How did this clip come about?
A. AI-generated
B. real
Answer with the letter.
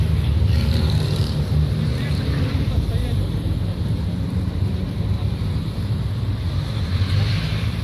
A